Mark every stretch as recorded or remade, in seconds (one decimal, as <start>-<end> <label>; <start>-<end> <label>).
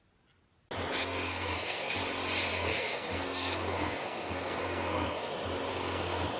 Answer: 0.0-1.0 recorded; 1.0-2.0 remade; 2.0-2.5 recorded; 2.5-5.3 remade; 5.3-5.7 recorded; 5.7-6.4 remade